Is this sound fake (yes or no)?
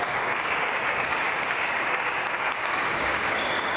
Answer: yes